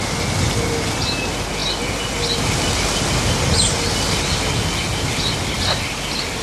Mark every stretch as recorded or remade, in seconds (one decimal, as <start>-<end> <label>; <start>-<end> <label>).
0.0-6.4 recorded